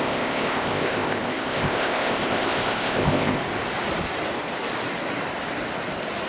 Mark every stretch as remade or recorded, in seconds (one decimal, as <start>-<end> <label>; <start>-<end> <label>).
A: 0.0-3.4 remade; 3.4-6.3 recorded